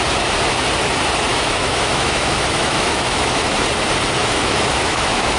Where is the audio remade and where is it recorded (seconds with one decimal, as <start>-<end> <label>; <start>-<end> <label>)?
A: 0.0-1.3 recorded; 1.3-3.5 remade; 3.5-4.2 recorded; 4.2-5.4 remade